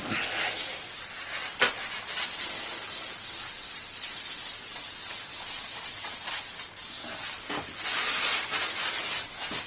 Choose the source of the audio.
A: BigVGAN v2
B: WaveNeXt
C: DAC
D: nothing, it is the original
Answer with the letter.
D